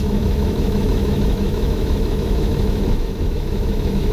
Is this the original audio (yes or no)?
no